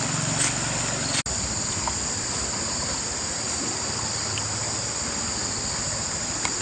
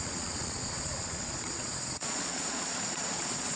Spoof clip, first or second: second